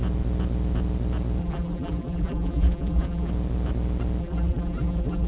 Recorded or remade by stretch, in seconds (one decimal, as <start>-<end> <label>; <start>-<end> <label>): 0.0-1.4 recorded; 1.4-3.3 remade; 3.3-4.2 recorded; 4.2-5.3 remade